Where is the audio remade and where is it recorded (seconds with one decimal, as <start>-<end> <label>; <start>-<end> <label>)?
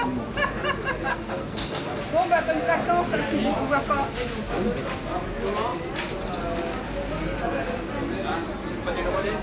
0.0-1.1 recorded; 1.1-2.0 remade; 2.0-9.4 recorded